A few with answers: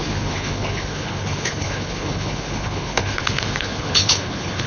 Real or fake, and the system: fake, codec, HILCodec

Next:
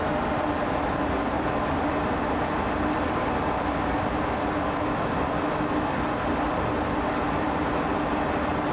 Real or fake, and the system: real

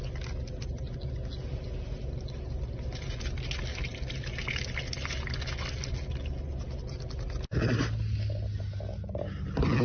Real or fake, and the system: real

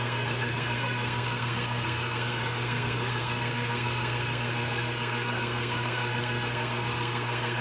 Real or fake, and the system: fake, codec, SNAC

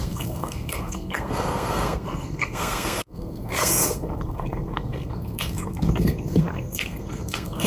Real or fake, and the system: fake, codec, SNAC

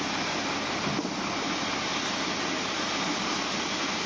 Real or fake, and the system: real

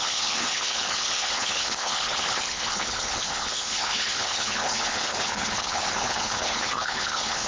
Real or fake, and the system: fake, codec, HILCodec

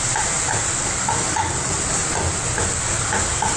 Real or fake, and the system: real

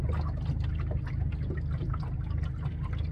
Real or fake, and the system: real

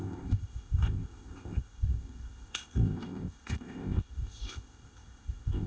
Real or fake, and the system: fake, codec, ZipCodec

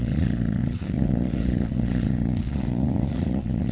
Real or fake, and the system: fake, vocoder, Vocos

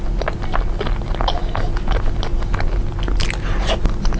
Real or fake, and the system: real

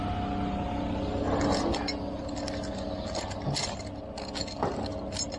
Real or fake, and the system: real